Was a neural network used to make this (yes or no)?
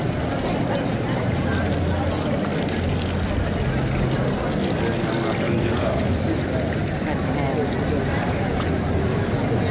no